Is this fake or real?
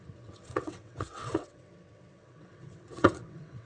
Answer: fake